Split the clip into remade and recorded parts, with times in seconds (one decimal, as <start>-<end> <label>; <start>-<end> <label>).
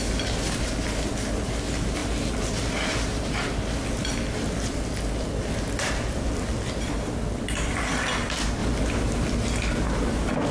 0.0-10.5 recorded